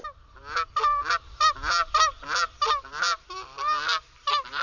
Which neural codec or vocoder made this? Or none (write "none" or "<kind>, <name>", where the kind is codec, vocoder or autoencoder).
none